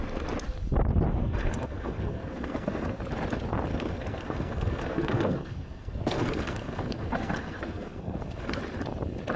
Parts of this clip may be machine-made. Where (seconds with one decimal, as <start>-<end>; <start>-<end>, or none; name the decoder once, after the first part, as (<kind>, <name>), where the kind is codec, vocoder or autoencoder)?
1.2-3.0 (codec, SNAC); 3.7-8.6